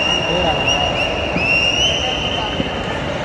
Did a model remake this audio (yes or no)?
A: no